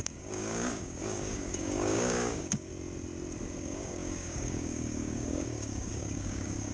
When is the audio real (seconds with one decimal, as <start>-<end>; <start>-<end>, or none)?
2.7-3.6